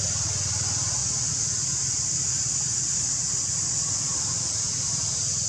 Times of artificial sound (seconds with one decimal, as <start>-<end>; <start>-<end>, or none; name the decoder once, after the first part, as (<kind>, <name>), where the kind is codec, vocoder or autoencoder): none